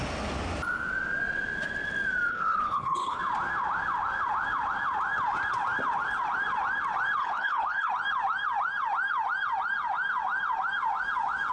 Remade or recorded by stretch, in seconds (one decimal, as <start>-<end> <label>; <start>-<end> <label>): 0.0-2.3 recorded; 2.3-3.2 remade; 3.2-7.2 recorded; 7.2-7.9 remade; 7.9-11.5 recorded